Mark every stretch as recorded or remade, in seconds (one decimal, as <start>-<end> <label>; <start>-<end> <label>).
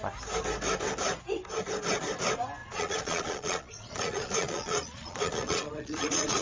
0.0-2.6 recorded; 2.6-6.4 remade